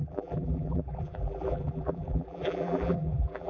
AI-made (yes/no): yes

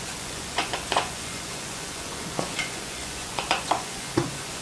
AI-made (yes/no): yes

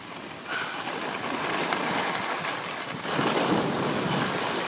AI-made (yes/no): no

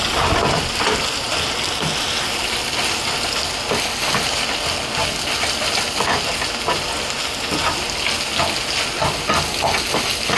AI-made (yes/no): no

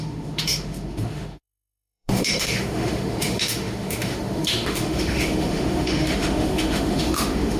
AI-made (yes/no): yes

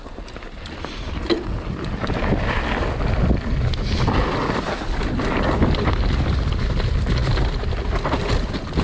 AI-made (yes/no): no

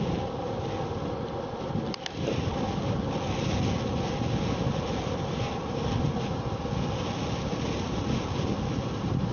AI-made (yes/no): no